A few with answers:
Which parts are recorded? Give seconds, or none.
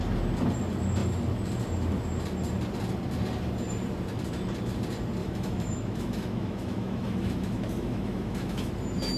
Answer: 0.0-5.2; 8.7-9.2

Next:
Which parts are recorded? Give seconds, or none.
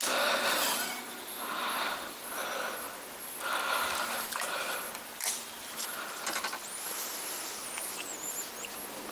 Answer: 0.0-9.1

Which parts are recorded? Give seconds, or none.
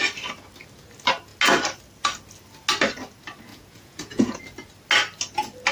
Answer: 0.0-3.5; 4.4-5.7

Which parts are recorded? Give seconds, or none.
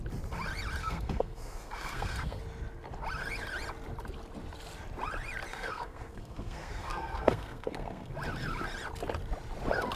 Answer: 0.0-0.8; 2.4-5.5; 8.1-10.0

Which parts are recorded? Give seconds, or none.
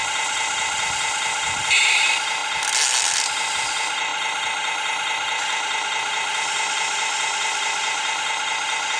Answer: 0.0-1.8; 2.4-3.5; 4.1-9.0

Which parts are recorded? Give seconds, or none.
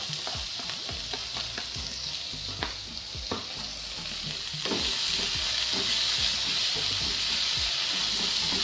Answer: 0.0-8.6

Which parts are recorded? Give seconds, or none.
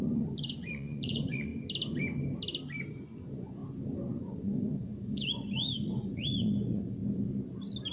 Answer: 1.5-2.9; 3.6-4.1; 7.0-7.9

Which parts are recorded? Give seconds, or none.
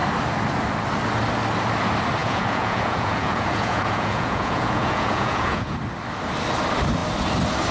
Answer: 0.0-2.2; 5.8-7.7